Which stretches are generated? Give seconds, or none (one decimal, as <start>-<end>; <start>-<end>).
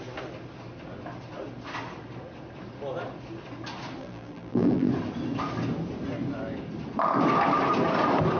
4.0-4.9